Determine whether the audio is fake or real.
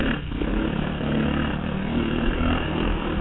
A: fake